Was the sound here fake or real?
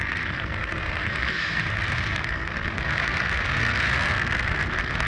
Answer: fake